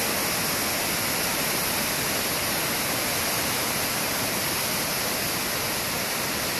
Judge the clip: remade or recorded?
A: recorded